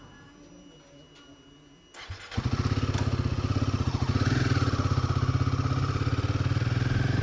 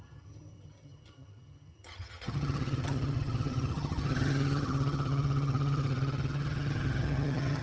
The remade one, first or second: second